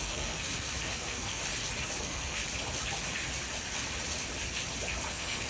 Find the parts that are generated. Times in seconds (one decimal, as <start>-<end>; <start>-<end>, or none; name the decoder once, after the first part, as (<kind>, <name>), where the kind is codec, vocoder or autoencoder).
0.0-1.4 (codec, SNAC); 2.0-2.4; 5.1-5.5